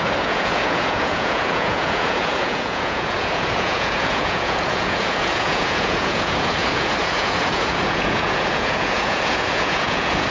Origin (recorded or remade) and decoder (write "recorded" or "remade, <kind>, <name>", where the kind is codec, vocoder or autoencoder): remade, vocoder, Vocos